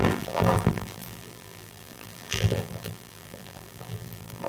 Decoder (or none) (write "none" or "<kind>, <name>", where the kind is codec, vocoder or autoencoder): vocoder, BigVGAN v2